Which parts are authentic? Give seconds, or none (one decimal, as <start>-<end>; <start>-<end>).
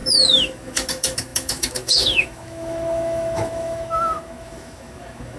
none